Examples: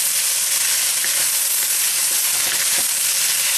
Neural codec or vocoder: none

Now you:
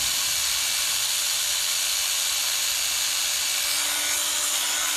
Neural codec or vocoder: none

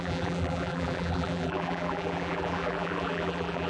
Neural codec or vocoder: vocoder, BigVGAN v2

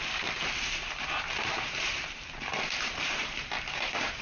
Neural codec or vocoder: vocoder, BigVGAN v2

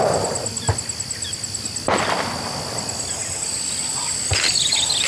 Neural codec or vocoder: none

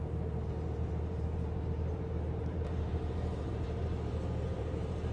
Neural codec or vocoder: vocoder, BigVGAN v2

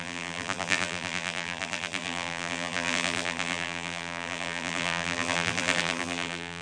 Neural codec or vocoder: vocoder, BigVGAN v2